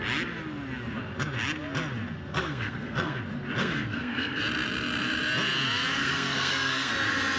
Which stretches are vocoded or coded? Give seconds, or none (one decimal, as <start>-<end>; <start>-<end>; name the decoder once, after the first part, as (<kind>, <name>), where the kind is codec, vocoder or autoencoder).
2.3-3.2 (codec, SNAC); 3.6-4.4; 6.0-6.9